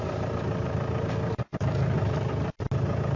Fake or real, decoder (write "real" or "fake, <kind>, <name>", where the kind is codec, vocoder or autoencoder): real